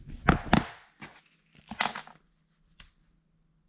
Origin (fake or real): real